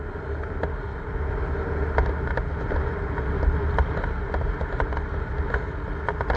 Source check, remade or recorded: recorded